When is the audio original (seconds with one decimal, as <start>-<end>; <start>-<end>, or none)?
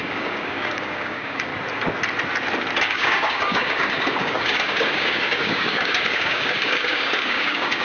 1.5-2.8